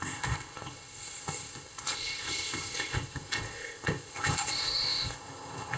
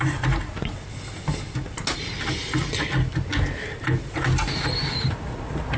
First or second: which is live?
second